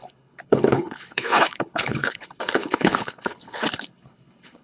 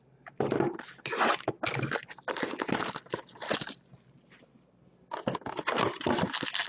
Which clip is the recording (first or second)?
second